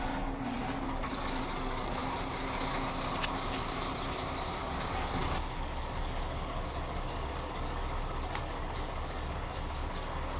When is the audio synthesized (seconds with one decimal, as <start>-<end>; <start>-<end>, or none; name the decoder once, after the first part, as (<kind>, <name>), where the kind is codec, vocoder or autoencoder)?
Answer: 0.0-2.0 (codec, DAC); 4.6-10.4